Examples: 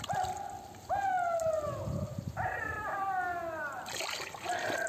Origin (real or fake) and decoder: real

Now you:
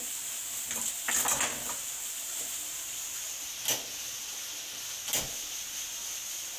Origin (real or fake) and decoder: real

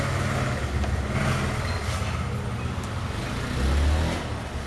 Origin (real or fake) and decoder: real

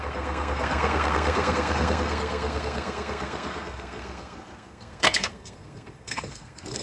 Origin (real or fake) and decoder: fake, codec, SNAC